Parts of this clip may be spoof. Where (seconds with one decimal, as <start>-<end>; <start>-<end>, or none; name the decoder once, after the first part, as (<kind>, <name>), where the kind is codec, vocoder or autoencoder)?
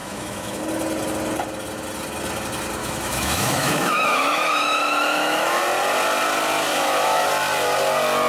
0.0-0.6 (autoencoder, DAC-VAE); 2.8-5.6; 6.7-7.3